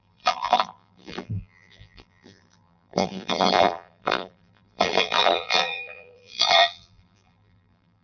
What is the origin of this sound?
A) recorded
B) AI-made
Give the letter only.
B